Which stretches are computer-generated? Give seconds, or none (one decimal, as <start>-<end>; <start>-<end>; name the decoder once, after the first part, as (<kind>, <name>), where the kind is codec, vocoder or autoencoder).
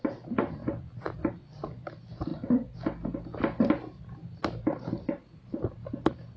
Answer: 0.0-0.6 (vocoder, BigVGAN v2); 1.3-2.3; 4.6-6.4